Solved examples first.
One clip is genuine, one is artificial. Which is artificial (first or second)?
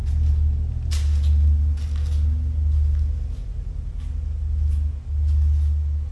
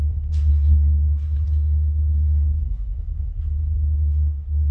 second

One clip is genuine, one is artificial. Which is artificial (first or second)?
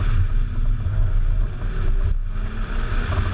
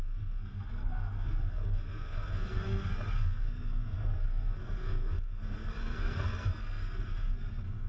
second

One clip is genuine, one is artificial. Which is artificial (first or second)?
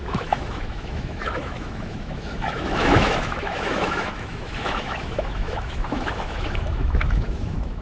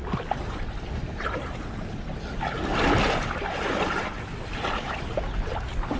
first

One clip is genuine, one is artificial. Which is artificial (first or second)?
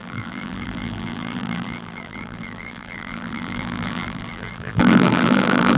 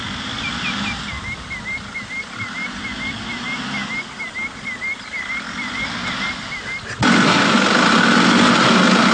first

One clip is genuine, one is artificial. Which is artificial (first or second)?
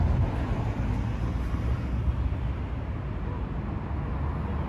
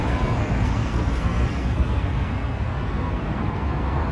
second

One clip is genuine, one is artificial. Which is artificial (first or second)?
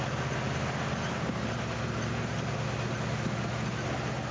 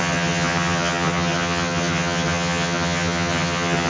second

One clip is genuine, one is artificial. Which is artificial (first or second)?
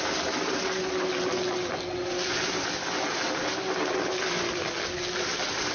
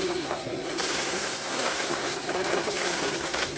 second